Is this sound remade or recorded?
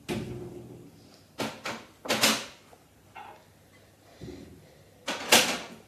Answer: recorded